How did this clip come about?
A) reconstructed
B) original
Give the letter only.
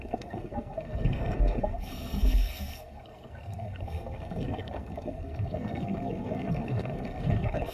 A